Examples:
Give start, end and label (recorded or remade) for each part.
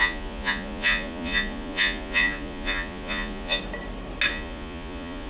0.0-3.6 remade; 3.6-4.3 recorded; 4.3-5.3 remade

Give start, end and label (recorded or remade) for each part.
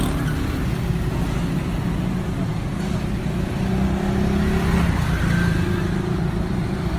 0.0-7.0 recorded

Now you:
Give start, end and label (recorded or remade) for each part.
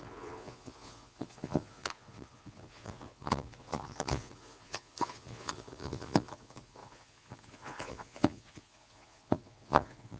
0.0-10.2 remade